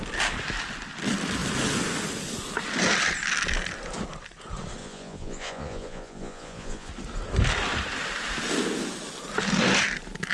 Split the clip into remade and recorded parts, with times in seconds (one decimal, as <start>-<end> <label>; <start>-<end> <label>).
0.0-4.8 recorded; 4.8-6.9 remade; 6.9-10.3 recorded

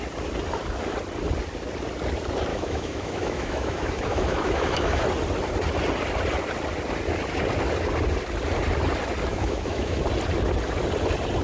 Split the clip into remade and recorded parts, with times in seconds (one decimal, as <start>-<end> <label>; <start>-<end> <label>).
0.0-2.5 recorded; 2.5-5.0 remade; 5.0-9.3 recorded; 9.3-10.0 remade; 10.0-11.4 recorded

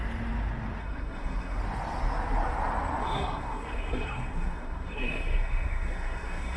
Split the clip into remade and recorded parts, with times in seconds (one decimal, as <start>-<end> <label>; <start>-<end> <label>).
0.0-0.8 recorded; 0.8-1.6 remade; 1.6-3.0 recorded; 3.0-6.6 remade